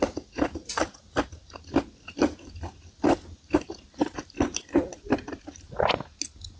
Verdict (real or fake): real